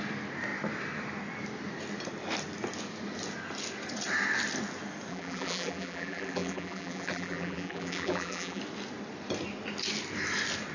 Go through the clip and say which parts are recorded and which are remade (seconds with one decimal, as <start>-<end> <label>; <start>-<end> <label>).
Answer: 0.0-5.1 recorded; 5.1-8.6 remade; 8.6-10.7 recorded